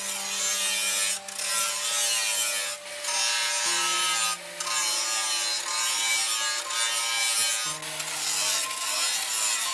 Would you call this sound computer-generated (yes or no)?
no